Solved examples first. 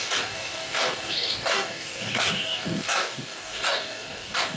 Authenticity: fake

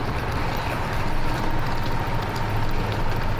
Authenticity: real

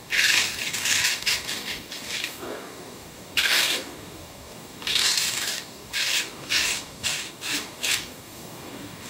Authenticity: fake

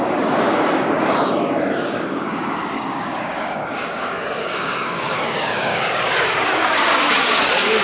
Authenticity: fake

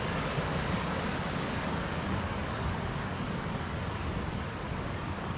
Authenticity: fake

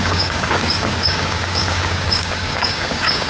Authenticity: fake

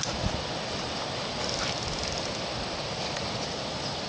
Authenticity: real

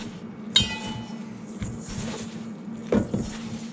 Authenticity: real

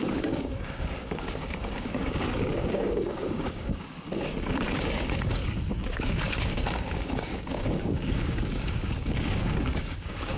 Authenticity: fake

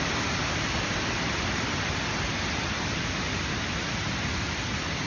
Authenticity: real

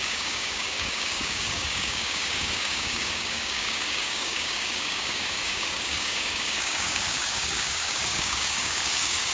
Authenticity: fake